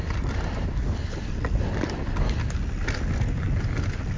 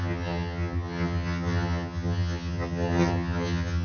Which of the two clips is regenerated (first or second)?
second